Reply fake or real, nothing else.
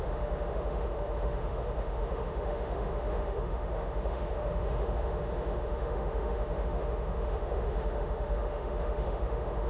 fake